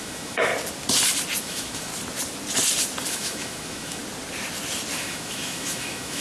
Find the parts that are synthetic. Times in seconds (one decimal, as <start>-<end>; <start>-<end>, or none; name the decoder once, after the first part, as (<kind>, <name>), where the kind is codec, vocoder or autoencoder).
0.0-0.5 (autoencoder, DAC-VAE); 1.4-1.9; 3.1-4.0; 5.0-6.2